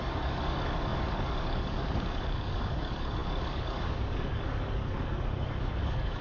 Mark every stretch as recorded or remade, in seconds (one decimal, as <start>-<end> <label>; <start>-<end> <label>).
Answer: 0.0-6.2 remade